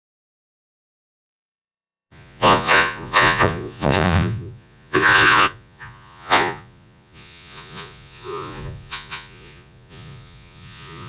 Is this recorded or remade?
remade